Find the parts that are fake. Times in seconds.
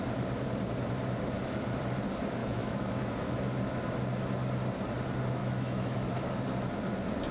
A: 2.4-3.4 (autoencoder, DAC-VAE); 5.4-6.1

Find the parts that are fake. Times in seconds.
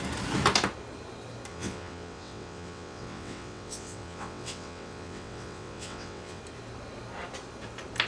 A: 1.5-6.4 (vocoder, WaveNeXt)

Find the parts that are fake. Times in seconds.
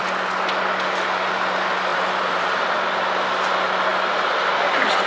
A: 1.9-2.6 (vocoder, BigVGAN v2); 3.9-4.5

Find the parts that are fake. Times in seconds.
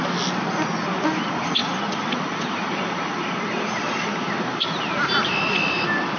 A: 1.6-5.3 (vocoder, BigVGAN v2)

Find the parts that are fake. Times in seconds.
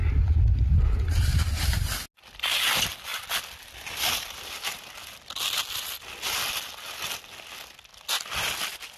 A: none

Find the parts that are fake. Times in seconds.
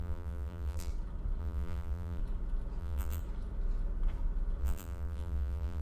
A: 0.0-0.9 (vocoder, BigVGAN v2); 1.4-2.2; 2.8-3.2; 4.6-5.8